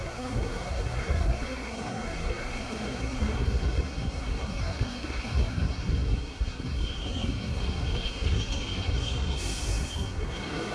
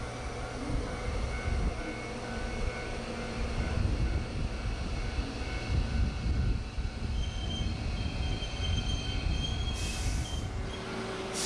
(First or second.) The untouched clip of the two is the second